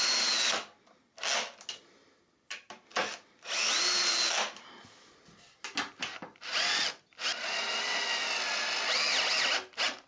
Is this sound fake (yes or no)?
no